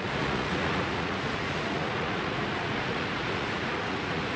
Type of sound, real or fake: fake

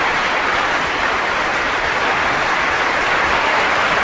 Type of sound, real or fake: real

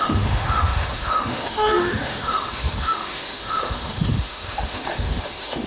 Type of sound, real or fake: fake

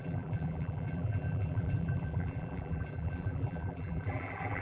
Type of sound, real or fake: fake